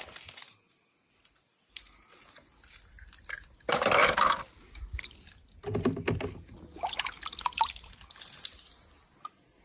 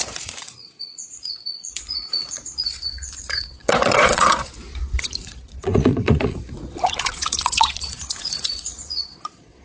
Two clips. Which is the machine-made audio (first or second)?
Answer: second